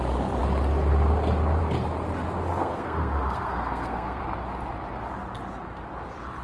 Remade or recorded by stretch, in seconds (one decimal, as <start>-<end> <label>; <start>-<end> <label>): 0.0-2.6 recorded; 2.6-4.2 remade; 4.2-6.4 recorded